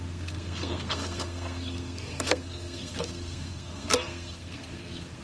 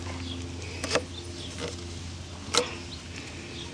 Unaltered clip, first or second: second